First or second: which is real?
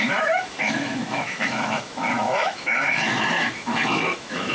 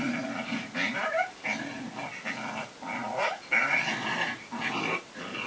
second